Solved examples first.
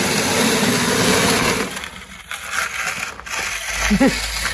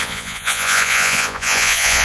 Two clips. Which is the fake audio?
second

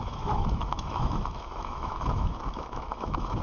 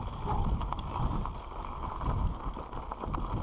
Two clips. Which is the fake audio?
first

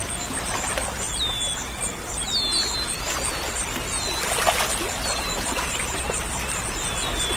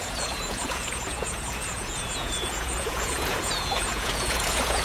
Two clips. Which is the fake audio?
second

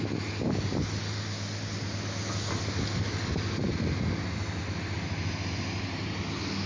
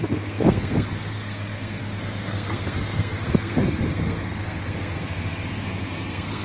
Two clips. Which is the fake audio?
second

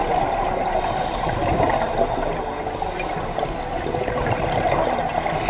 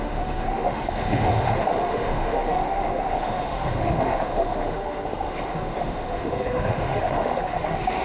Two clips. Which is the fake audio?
second